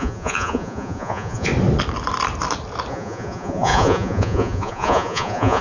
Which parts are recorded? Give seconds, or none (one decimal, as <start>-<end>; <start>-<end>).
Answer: 1.5-2.9